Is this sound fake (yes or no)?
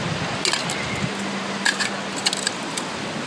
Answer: no